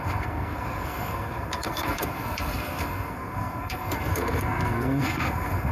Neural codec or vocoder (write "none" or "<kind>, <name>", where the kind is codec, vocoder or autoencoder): codec, SNAC